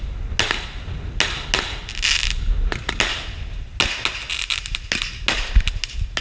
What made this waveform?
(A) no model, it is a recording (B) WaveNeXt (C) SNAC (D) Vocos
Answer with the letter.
A